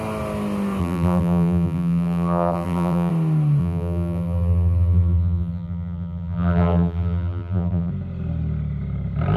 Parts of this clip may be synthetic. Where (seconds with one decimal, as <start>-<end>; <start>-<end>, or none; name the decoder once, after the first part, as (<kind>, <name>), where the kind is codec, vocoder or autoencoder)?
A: 0.8-3.1 (vocoder, BigVGAN v2); 3.6-7.9